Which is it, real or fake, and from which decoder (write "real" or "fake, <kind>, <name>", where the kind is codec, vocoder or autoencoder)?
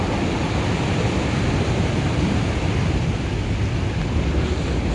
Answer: real